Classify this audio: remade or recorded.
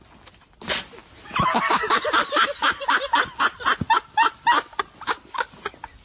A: recorded